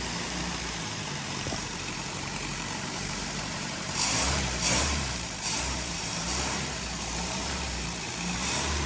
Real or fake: fake